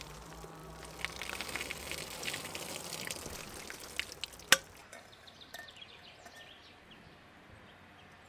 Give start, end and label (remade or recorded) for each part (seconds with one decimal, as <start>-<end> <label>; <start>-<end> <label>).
0.0-4.8 recorded; 4.8-6.3 remade; 6.3-8.3 recorded